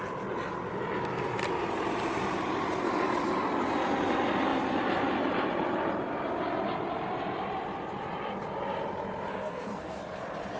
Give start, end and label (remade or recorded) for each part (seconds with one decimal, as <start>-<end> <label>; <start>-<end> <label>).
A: 0.0-9.3 recorded; 9.3-10.0 remade; 10.0-10.6 recorded